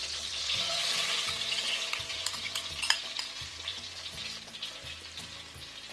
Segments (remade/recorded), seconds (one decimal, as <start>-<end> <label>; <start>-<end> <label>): 0.0-3.0 remade; 3.0-3.7 recorded; 3.7-4.2 remade; 4.2-5.9 recorded